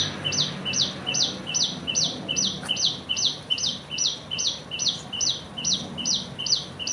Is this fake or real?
real